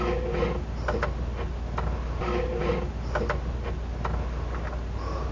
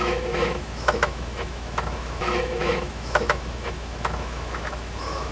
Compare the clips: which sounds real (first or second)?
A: first